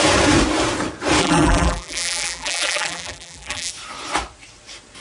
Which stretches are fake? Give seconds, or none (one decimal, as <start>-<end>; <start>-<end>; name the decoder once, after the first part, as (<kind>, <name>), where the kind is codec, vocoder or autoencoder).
1.2-3.7 (vocoder, BigVGAN v2)